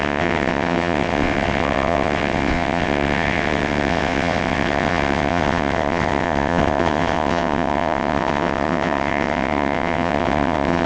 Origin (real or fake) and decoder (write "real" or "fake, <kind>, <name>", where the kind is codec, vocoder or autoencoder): fake, vocoder, WaveNeXt